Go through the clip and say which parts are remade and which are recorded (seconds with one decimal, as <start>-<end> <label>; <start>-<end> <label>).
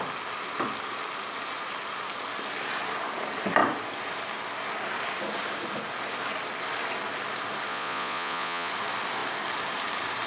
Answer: 0.0-7.7 recorded; 7.7-8.7 remade; 8.7-10.3 recorded